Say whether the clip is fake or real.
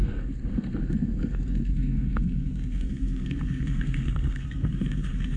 fake